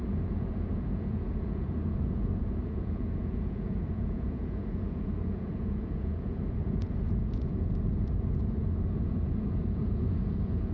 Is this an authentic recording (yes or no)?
no